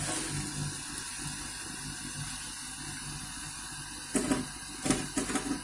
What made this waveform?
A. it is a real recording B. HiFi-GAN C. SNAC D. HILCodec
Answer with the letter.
A